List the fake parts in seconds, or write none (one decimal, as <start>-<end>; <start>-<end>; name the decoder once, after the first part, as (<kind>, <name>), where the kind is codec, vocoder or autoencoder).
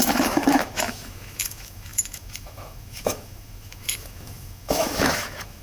0.0-5.6 (autoencoder, DAC-VAE)